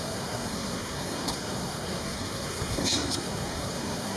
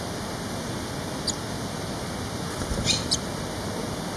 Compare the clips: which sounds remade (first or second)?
first